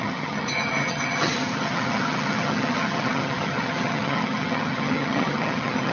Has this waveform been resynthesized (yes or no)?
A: yes